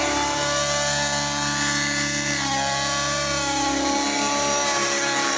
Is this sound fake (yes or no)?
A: no